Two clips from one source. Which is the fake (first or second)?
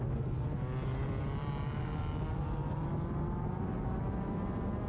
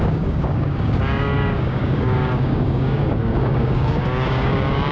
second